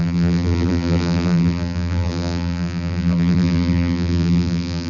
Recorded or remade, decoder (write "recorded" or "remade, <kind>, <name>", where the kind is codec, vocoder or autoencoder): remade, vocoder, BigVGAN v2